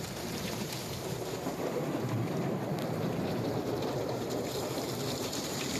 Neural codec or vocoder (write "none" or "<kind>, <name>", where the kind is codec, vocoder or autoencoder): vocoder, BigVGAN v2